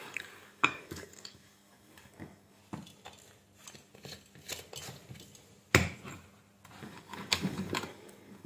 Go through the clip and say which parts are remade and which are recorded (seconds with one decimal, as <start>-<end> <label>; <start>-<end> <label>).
0.0-2.6 remade; 2.6-6.8 recorded; 6.8-8.5 remade